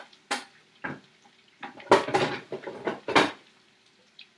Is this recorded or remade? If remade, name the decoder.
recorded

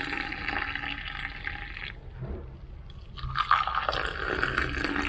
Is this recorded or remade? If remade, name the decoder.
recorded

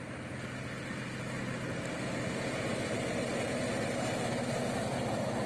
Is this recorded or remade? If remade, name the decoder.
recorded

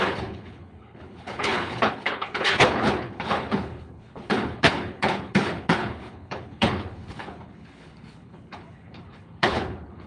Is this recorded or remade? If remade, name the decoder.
remade, codec, HILCodec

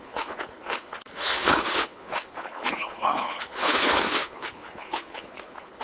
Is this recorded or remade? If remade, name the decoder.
remade, codec, HILCodec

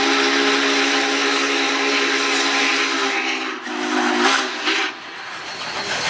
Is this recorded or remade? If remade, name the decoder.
recorded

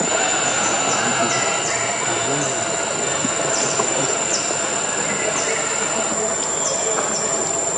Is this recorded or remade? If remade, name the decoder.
recorded